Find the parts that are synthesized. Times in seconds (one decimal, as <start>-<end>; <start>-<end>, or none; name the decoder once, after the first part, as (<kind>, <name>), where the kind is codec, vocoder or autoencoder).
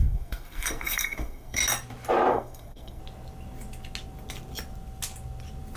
0.0-1.6 (codec, SNAC); 2.3-3.0